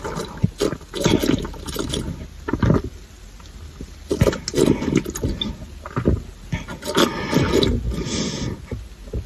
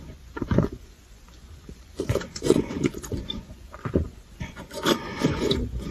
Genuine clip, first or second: first